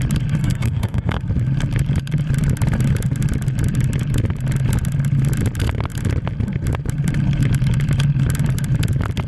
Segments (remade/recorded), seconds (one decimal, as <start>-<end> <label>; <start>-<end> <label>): 0.0-0.4 recorded; 0.4-1.2 remade; 1.2-9.3 recorded